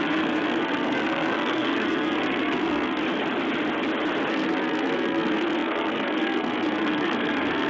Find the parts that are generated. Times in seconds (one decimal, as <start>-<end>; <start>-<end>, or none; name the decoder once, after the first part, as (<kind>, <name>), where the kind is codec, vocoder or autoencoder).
0.0-3.0 (codec, SNAC); 4.3-7.7